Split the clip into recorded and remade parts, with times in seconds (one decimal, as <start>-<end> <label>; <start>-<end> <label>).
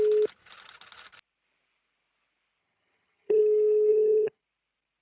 0.0-2.6 recorded; 2.6-3.4 remade; 3.4-3.9 recorded; 3.9-4.4 remade; 4.4-5.0 recorded